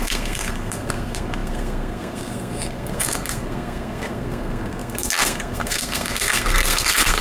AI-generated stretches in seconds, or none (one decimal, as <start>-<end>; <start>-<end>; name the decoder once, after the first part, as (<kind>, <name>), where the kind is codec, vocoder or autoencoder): 0.0-7.2 (codec, SNAC)